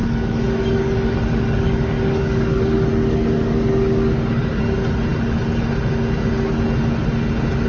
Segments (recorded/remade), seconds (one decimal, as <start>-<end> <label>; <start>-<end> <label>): 0.0-4.6 remade; 4.6-7.7 recorded